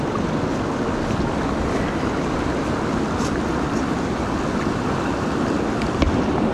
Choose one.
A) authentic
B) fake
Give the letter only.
A